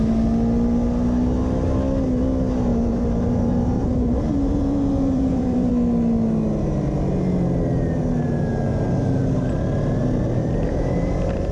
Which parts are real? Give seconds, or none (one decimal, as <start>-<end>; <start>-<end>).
0.0-2.7; 5.7-8.7; 9.2-10.0; 11.1-11.5